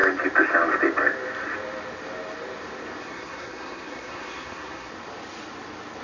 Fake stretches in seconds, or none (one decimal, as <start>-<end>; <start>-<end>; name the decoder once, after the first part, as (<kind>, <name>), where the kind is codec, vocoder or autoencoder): 3.0-4.9 (codec, SNAC)